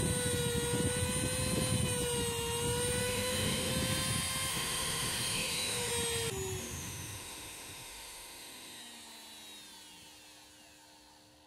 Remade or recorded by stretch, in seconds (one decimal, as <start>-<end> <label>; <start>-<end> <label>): 0.0-3.0 recorded; 3.0-3.7 remade; 3.7-4.5 recorded; 4.5-5.9 remade; 5.9-6.6 recorded; 6.6-8.8 remade; 8.8-11.5 recorded